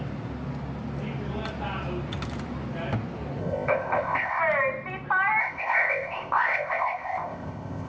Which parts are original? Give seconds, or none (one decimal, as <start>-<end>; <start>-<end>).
0.0-3.4; 4.4-5.4